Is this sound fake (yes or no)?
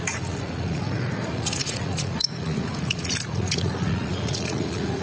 yes